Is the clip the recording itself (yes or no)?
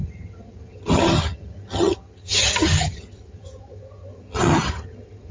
no